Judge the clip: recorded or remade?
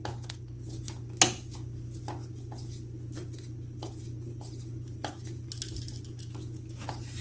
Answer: recorded